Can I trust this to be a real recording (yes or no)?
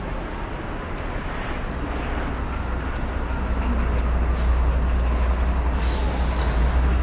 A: yes